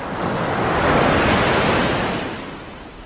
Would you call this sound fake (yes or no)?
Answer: no